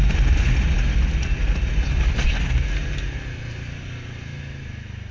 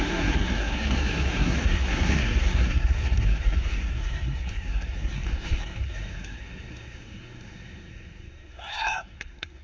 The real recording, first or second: first